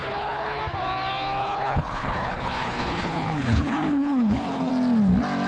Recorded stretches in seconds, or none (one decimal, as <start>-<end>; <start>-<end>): 0.6-1.4; 4.7-5.5